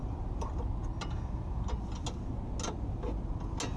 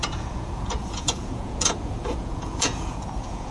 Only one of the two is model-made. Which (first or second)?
second